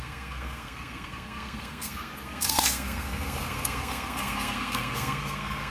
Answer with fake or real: fake